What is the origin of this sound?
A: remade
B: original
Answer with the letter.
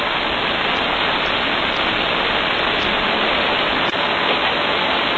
B